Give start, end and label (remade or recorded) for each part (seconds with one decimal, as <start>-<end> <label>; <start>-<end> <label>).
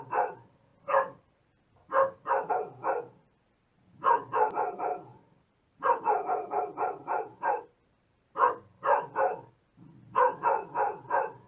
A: 0.0-5.1 recorded; 5.1-7.4 remade; 7.4-11.5 recorded